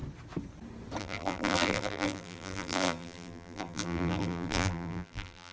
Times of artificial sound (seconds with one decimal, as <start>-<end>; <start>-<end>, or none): 1.0-5.5